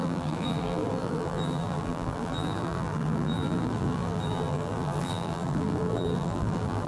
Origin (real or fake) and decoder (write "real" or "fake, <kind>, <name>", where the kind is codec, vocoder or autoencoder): fake, vocoder, BigVGAN v2